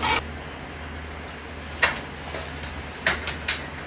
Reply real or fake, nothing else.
real